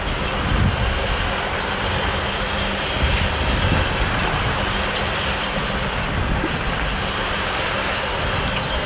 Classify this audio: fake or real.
real